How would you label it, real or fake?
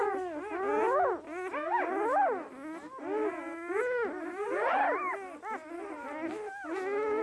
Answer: real